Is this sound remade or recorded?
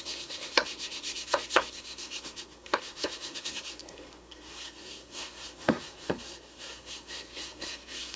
remade